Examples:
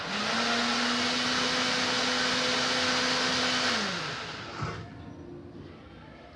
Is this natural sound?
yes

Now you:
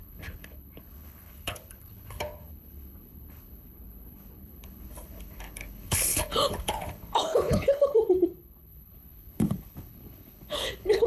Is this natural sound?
no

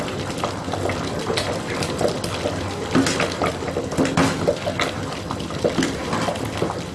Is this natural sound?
yes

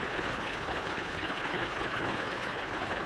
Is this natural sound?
no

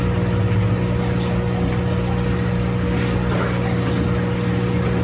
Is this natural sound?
yes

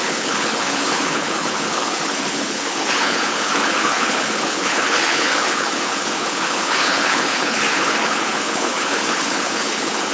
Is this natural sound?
no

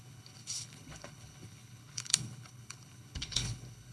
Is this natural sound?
no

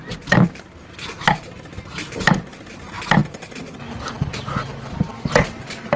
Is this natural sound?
yes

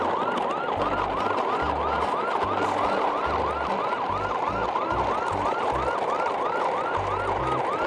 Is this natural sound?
yes